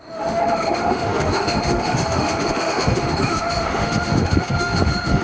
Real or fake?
fake